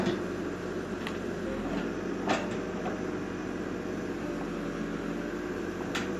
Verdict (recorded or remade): recorded